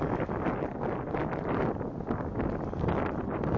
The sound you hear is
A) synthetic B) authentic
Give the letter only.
B